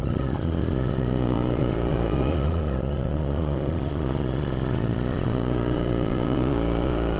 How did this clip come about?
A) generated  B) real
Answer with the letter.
A